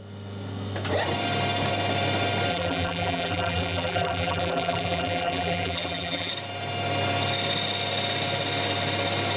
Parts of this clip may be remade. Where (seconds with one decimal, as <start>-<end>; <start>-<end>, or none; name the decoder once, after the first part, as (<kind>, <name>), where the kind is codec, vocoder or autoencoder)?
2.5-6.3 (vocoder, BigVGAN v2)